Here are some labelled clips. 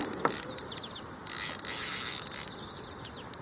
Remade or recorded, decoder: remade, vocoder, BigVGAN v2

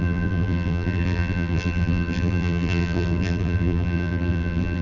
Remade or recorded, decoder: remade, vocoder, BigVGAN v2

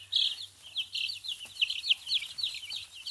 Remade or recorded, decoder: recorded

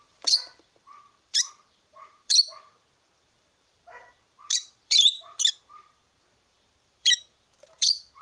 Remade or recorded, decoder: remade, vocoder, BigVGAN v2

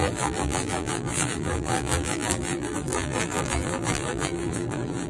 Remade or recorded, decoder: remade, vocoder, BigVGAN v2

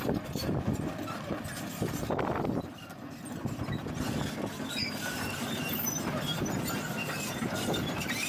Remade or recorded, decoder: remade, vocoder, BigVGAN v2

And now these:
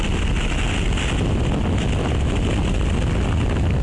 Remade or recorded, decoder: recorded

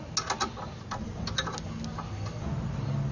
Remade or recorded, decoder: recorded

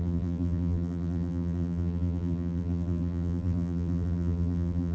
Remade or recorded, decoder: remade, vocoder, BigVGAN v2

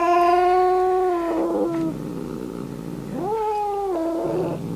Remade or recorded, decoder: recorded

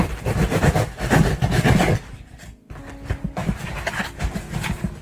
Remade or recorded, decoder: recorded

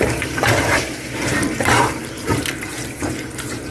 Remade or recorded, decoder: remade, vocoder, BigVGAN v2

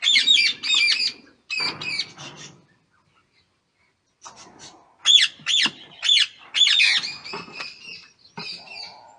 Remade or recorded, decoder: recorded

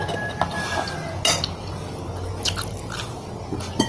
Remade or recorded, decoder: recorded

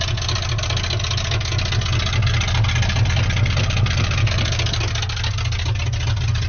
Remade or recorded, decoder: recorded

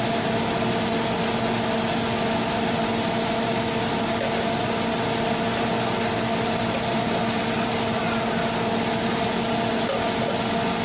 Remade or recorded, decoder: recorded